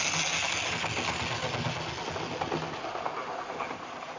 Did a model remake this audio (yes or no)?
no